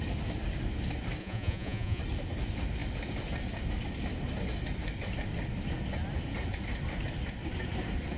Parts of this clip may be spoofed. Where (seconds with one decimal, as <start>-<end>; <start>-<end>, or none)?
1.2-2.0